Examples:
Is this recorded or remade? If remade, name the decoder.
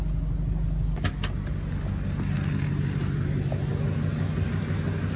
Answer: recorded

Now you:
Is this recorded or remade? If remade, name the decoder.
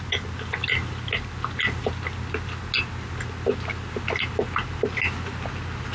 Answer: recorded